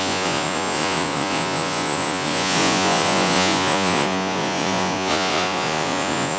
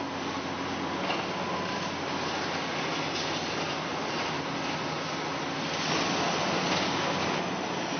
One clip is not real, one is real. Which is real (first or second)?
second